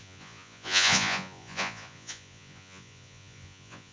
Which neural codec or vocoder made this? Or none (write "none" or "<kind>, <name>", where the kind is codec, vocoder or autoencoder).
vocoder, Vocos